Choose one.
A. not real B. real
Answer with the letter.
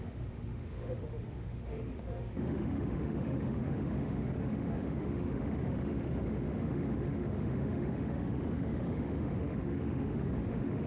A